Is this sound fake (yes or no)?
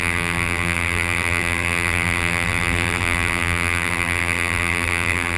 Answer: yes